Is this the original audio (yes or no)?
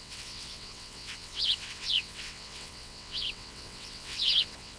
no